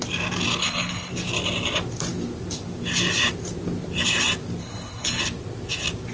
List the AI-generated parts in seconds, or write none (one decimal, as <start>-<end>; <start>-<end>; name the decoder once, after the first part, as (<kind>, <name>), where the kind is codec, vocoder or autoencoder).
0.6-1.1 (codec, HILCodec); 4.6-5.2